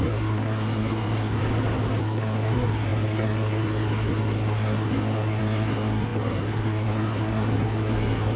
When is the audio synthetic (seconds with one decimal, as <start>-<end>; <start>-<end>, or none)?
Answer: 0.0-1.4; 2.0-8.4